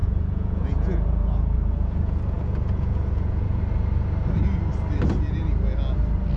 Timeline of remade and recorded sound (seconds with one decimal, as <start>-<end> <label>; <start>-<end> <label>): 0.0-3.6 remade; 3.6-6.4 recorded